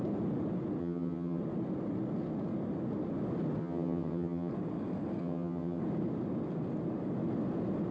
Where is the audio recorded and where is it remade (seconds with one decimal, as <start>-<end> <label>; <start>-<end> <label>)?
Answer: 0.0-0.8 recorded; 0.8-1.4 remade; 1.4-3.6 recorded; 3.6-4.5 remade; 4.5-5.2 recorded; 5.2-5.8 remade; 5.8-7.9 recorded